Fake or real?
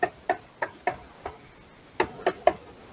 real